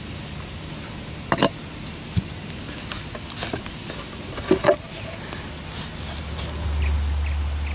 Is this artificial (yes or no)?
no